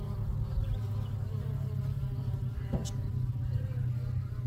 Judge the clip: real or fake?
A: real